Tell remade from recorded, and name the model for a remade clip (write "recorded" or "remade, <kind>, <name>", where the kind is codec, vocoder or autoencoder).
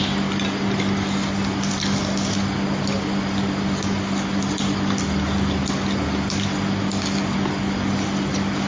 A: recorded